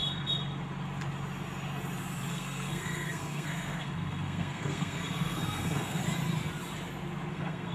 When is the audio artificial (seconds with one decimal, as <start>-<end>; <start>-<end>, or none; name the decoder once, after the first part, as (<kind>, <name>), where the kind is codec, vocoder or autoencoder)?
2.3-6.0 (codec, SNAC); 7.3-7.7